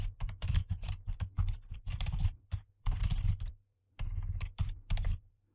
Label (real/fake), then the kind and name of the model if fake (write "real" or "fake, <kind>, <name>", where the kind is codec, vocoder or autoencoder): fake, vocoder, BigVGAN v2